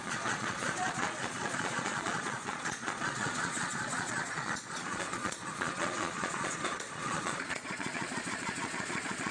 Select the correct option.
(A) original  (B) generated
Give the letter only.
B